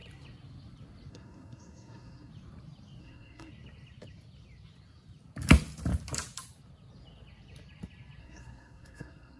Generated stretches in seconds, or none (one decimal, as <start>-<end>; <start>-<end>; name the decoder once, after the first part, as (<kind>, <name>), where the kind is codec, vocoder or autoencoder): 1.1-2.3 (codec, SNAC); 3.0-3.5; 8.2-9.4